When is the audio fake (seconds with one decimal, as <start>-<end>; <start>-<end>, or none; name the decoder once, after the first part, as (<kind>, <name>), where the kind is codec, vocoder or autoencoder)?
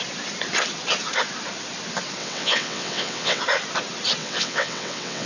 2.2-3.4 (vocoder, WaveNeXt); 4.2-5.3